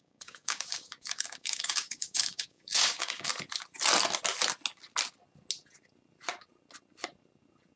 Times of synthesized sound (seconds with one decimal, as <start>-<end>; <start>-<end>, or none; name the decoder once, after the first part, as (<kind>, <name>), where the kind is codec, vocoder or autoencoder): 0.0-3.3 (codec, DAC)